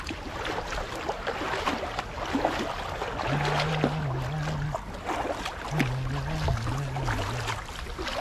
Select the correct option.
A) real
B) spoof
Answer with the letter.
A